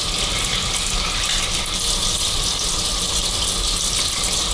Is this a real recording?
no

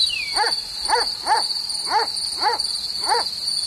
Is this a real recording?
yes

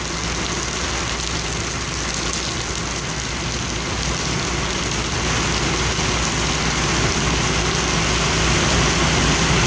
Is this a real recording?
yes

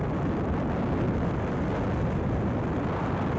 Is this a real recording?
yes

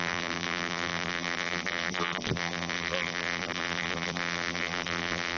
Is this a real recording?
no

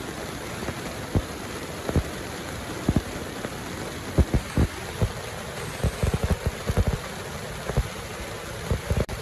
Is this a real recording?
no